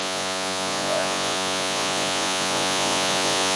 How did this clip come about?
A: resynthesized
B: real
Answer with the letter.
A